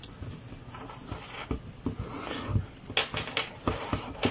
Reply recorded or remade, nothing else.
recorded